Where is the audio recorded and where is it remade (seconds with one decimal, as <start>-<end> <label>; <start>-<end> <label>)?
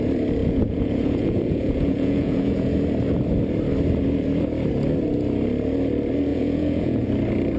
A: 0.0-0.4 recorded; 0.4-2.7 remade; 2.7-6.3 recorded; 6.3-7.1 remade; 7.1-7.6 recorded